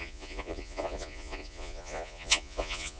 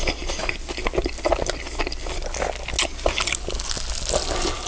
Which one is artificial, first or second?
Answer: first